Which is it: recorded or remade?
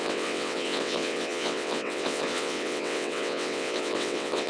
remade